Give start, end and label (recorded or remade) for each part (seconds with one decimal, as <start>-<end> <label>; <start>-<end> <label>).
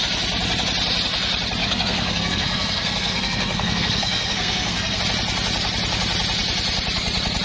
0.0-1.6 recorded; 1.6-5.0 remade; 5.0-7.4 recorded